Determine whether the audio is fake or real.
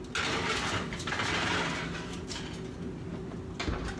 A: real